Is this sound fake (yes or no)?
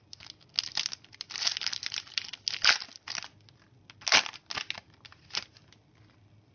no